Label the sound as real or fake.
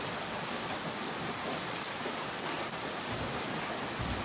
real